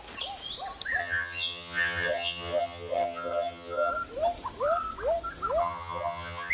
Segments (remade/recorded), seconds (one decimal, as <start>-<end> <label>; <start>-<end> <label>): 0.0-1.0 recorded; 1.0-3.9 remade; 3.9-5.6 recorded; 5.6-6.5 remade